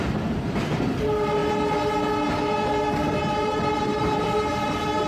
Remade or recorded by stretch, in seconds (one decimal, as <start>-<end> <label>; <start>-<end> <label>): 0.0-1.4 remade; 1.4-3.3 recorded; 3.3-5.1 remade